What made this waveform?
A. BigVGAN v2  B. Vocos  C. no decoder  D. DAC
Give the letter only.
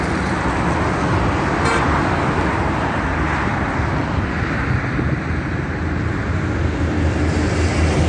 C